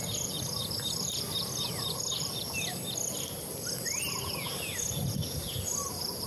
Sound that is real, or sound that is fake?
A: real